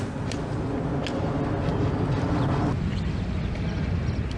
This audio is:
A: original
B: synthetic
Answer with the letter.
A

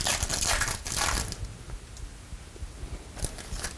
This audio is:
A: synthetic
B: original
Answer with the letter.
B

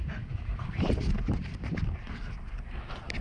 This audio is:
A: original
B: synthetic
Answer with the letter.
A